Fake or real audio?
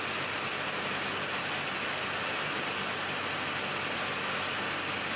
real